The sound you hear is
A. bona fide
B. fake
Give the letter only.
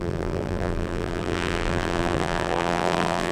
B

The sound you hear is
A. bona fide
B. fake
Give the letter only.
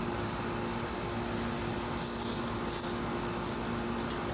A